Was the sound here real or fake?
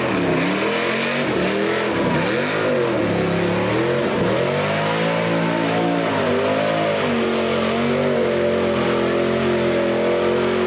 real